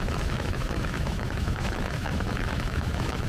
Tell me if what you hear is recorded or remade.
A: remade